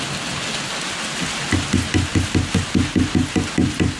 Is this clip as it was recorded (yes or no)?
yes